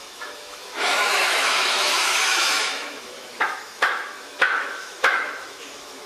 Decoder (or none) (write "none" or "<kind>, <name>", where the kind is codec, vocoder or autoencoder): autoencoder, DAC-VAE